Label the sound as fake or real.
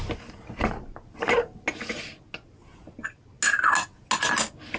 real